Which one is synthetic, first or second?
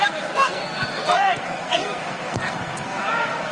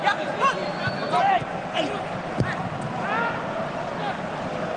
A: first